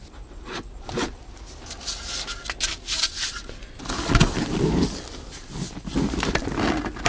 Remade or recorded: recorded